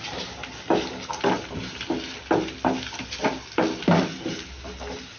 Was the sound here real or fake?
real